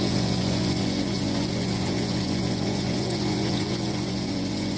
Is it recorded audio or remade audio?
remade